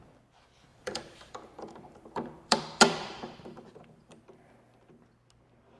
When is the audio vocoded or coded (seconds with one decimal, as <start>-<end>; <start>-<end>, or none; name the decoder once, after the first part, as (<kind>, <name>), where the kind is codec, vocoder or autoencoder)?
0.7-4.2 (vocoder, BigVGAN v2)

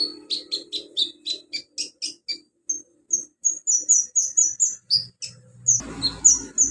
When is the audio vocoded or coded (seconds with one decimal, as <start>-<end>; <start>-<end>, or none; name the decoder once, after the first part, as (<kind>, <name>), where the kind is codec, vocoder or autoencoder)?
none

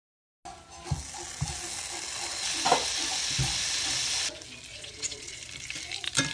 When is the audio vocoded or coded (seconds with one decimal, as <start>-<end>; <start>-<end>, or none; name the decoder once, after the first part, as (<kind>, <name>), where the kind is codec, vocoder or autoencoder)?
4.7-5.4 (vocoder, Vocos)